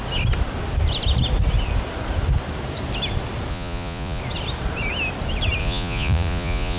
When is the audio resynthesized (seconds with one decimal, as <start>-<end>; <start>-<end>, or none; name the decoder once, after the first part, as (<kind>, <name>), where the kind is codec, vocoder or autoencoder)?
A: 3.5-4.2 (vocoder, Vocos); 5.6-6.8